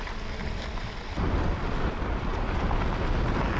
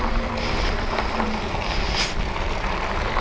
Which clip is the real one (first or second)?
second